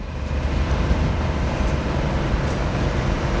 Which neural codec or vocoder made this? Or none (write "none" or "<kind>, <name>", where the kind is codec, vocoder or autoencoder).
vocoder, BigVGAN v2